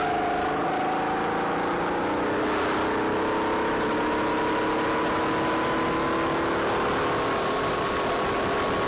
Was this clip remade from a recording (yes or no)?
no